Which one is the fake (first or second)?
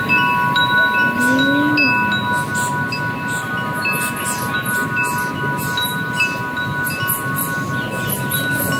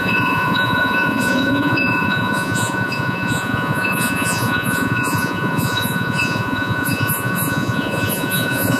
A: second